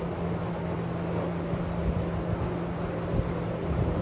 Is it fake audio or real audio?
real